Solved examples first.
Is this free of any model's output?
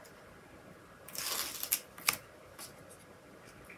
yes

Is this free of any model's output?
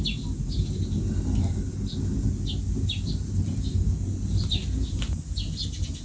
yes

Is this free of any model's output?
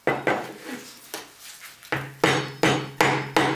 yes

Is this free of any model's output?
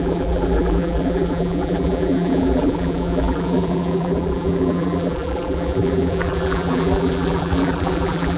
no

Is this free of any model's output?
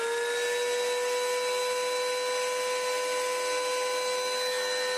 yes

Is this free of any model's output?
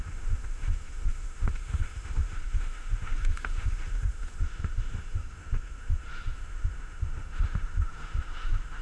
no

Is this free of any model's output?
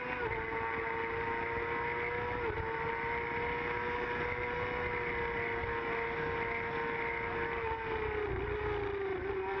yes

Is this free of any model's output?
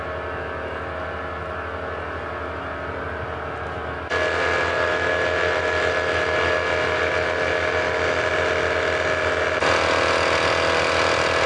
yes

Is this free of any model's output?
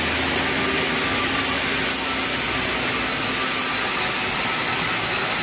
yes